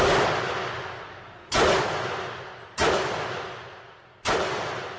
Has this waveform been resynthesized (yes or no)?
no